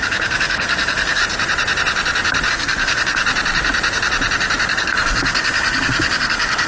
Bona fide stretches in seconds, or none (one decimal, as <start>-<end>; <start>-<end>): 1.2-2.5; 3.2-4.7